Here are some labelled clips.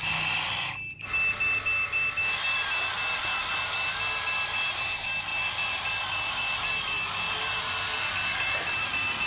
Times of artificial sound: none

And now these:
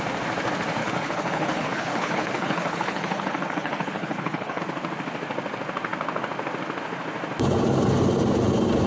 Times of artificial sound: 0.8-4.6

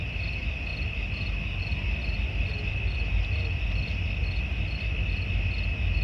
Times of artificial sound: none